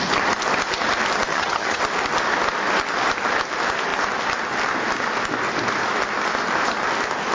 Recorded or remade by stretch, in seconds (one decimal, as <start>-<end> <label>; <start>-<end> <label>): 0.0-1.3 recorded; 1.3-1.8 remade; 1.8-7.3 recorded